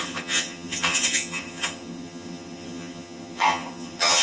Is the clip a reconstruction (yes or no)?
yes